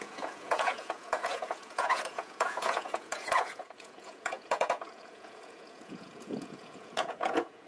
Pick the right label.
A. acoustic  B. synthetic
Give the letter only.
B